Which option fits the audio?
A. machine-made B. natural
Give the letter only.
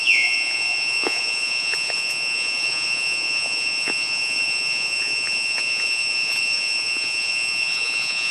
A